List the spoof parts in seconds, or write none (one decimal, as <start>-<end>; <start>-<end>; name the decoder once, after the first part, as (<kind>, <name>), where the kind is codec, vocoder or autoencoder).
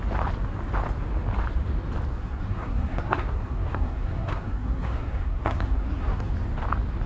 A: 2.1-6.3 (codec, SNAC)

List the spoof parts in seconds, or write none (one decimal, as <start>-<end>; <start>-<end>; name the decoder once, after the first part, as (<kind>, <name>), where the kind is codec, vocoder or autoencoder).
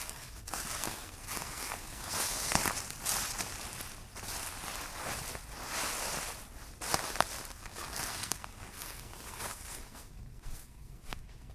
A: 0.0-2.6 (codec, SNAC); 7.5-11.5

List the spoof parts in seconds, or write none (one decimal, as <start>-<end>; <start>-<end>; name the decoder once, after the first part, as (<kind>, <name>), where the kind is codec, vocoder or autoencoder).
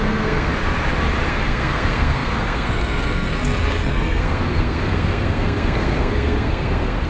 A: 0.0-0.5 (codec, SNAC); 1.3-7.1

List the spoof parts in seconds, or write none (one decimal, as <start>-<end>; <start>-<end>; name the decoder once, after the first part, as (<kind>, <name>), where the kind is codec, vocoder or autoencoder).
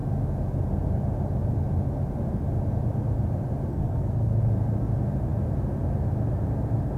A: 3.7-4.4 (codec, SNAC)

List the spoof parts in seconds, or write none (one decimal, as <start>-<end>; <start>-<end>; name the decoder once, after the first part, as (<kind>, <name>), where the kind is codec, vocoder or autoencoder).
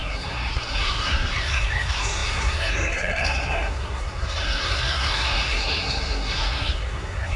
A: 0.0-7.4 (codec, SNAC)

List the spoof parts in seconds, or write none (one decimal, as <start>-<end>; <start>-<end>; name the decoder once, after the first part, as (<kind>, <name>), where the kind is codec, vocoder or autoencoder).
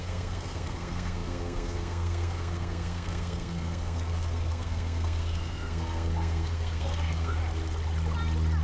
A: 0.0-7.4 (codec, SNAC)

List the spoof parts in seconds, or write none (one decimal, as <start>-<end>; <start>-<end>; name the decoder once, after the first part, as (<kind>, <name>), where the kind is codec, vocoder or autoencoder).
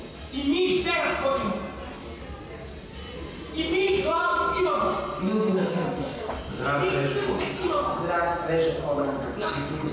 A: 5.2-6.3 (codec, SNAC); 9.0-9.9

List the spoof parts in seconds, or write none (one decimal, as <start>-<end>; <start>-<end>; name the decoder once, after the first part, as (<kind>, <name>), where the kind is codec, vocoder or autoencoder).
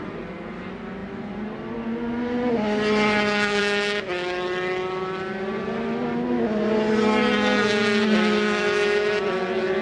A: none